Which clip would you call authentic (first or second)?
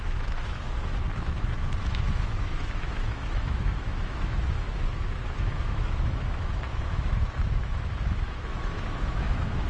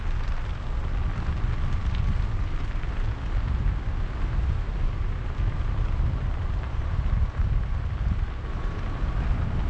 second